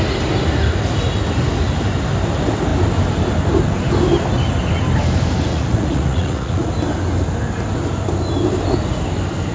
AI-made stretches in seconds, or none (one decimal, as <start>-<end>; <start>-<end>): 5.5-6.7